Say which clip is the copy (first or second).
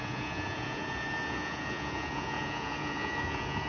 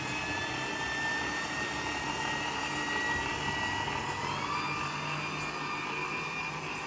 first